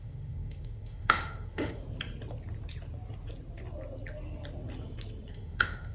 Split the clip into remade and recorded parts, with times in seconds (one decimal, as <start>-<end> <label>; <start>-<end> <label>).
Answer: 0.0-1.8 remade; 1.8-5.3 recorded; 5.3-5.9 remade